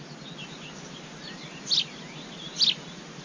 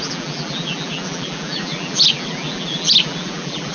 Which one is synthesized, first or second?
second